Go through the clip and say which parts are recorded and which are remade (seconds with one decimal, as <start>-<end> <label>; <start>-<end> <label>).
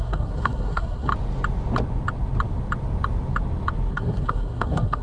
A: 0.0-1.1 remade; 1.1-3.9 recorded; 3.9-5.0 remade